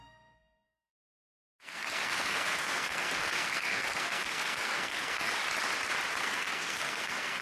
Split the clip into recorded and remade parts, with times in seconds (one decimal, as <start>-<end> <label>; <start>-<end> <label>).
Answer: 0.0-5.4 remade; 5.4-6.2 recorded; 6.2-7.4 remade